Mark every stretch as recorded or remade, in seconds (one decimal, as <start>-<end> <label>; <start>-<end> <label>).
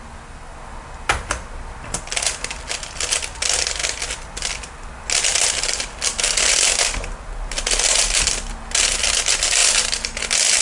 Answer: 0.0-10.6 recorded